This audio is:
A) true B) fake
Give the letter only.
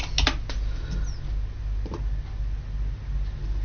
A